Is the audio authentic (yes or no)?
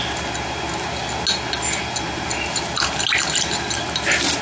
yes